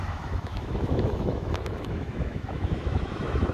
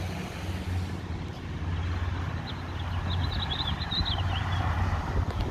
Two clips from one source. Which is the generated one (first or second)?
first